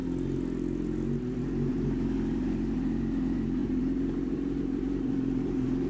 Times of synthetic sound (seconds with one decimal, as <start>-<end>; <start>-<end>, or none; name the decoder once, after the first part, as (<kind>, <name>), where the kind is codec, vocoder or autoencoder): 1.7-5.9 (vocoder, BigVGAN v2)